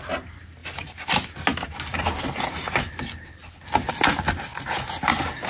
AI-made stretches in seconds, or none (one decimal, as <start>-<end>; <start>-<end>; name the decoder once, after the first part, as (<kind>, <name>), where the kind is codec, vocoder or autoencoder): none

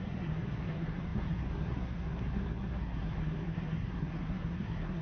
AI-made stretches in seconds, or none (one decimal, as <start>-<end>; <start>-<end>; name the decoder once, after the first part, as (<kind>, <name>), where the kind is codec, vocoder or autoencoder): 0.0-5.0 (codec, SNAC)

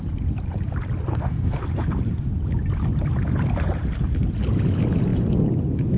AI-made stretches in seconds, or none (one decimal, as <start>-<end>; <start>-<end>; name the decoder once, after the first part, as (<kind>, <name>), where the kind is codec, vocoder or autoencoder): 1.1-1.6 (codec, SNAC)